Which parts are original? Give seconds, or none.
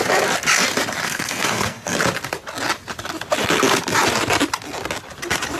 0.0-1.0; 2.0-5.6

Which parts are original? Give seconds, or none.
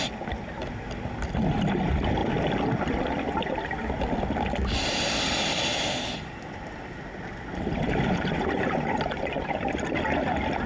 0.0-10.7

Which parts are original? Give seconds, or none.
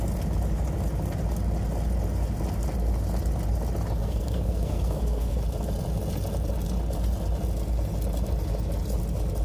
0.0-4.0; 5.4-9.4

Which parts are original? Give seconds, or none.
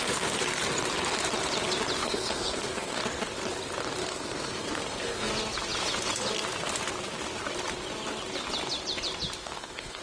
0.0-2.0; 3.0-4.0; 5.3-9.4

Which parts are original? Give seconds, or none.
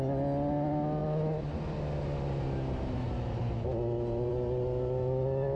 0.0-5.6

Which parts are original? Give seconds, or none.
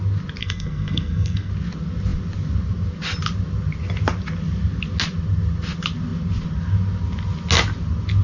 0.0-0.4; 1.5-8.2